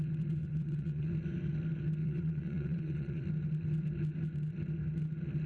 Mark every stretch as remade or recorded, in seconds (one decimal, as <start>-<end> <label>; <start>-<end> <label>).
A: 0.0-0.4 recorded; 0.4-1.1 remade; 1.1-2.0 recorded; 2.0-3.2 remade; 3.2-5.5 recorded